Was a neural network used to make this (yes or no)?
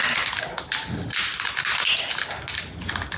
no